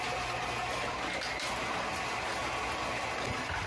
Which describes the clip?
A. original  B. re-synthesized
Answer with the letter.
A